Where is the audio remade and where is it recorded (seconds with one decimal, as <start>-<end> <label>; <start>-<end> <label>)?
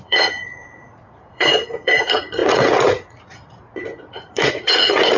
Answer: 0.0-5.2 remade